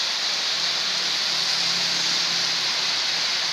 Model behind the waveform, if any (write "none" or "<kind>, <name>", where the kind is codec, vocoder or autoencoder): none